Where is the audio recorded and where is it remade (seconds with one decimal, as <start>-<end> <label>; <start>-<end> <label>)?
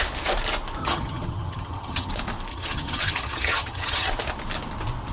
0.0-0.8 recorded; 0.8-2.1 remade; 2.1-2.5 recorded; 2.5-4.1 remade; 4.1-5.1 recorded